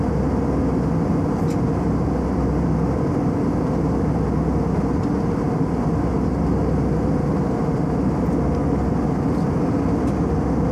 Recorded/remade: recorded